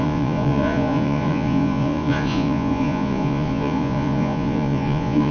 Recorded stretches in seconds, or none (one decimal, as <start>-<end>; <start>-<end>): none